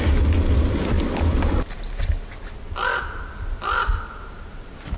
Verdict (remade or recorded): recorded